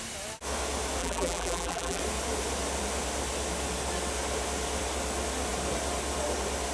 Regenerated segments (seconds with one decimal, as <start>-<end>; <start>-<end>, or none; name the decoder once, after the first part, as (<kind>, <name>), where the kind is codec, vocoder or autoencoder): 1.0-2.0 (vocoder, BigVGAN v2)